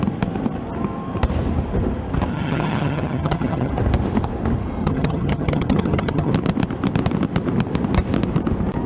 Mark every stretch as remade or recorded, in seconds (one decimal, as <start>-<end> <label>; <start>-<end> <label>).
0.0-2.3 recorded; 2.3-3.7 remade; 3.7-4.8 recorded; 4.8-6.3 remade; 6.3-8.9 recorded